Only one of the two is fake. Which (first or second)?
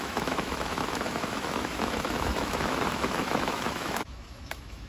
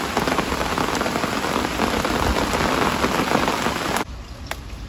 first